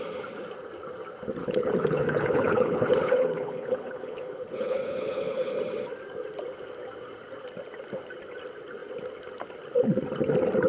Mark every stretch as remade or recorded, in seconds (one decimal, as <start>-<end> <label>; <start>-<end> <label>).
0.0-1.4 recorded; 1.4-5.6 remade; 5.6-10.7 recorded